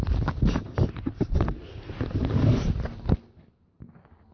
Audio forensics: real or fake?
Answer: real